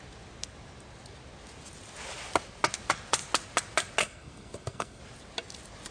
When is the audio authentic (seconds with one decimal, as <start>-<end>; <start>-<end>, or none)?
0.0-4.0; 5.0-5.9